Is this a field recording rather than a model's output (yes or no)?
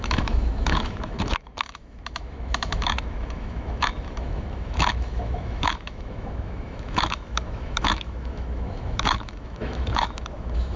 no